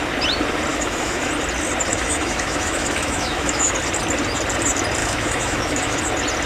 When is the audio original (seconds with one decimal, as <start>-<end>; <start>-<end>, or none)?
0.0-0.7; 1.3-1.9; 3.7-5.0; 6.0-6.5